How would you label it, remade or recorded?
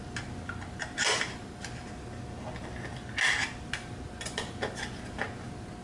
recorded